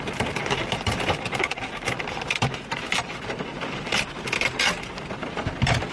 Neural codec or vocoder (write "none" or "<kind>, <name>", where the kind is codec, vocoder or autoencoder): none